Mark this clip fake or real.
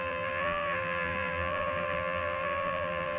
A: fake